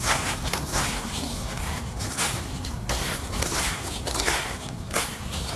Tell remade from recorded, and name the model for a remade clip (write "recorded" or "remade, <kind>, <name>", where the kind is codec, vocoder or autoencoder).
remade, codec, SNAC